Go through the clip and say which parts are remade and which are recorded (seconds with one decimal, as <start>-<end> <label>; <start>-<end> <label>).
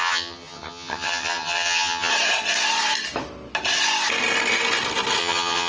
0.0-2.1 remade; 2.1-5.2 recorded; 5.2-5.7 remade